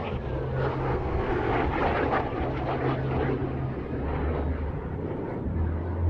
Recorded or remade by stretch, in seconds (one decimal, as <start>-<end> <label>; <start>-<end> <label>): 0.0-0.9 recorded; 0.9-1.5 remade; 1.5-6.1 recorded